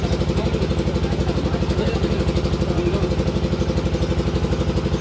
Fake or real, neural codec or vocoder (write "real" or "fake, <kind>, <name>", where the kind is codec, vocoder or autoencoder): real